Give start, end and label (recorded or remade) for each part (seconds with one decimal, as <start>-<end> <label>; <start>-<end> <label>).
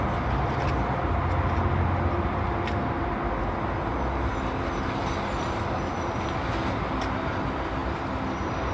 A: 0.0-8.7 recorded